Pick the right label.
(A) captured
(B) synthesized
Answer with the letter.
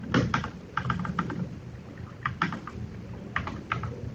A